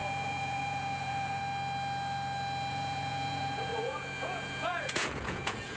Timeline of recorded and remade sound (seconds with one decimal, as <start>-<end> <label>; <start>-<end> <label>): 0.0-1.4 remade; 1.4-2.7 recorded; 2.7-5.8 remade